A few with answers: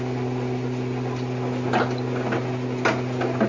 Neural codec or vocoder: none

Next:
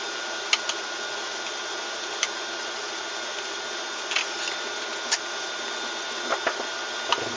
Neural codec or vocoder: none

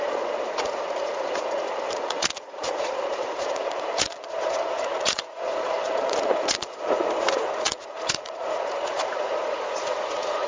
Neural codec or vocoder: vocoder, Vocos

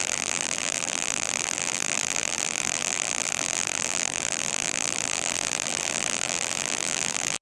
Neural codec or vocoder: vocoder, BigVGAN v2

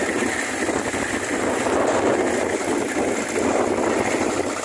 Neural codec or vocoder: none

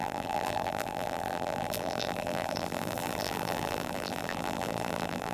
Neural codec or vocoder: vocoder, BigVGAN v2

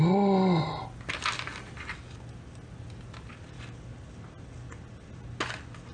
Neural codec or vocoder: none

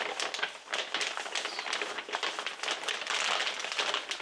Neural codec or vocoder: none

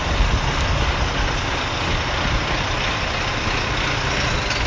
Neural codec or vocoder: none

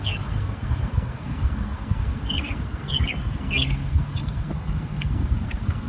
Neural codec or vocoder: codec, SNAC